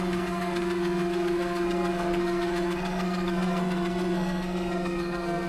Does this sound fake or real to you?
fake